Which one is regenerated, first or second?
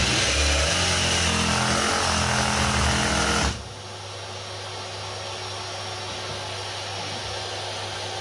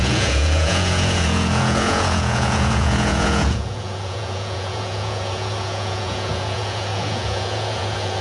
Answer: second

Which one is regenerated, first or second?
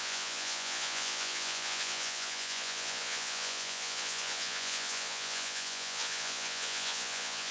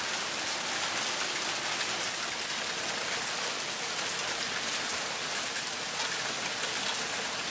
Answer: first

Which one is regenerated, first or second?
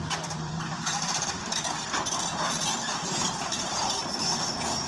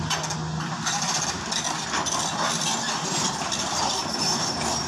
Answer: first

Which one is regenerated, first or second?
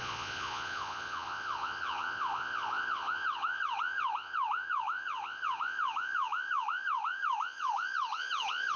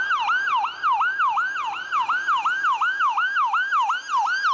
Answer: first